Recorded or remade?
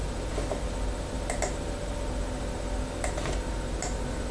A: recorded